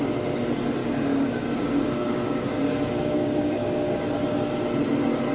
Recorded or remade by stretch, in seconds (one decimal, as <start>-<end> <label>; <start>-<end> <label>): 0.0-0.8 recorded; 0.8-4.0 remade; 4.0-5.3 recorded